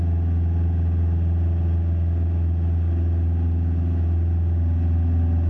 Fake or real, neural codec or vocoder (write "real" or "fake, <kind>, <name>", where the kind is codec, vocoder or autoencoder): real